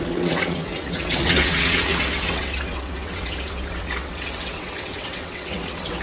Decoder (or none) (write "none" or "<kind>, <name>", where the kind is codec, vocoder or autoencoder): vocoder, WaveNeXt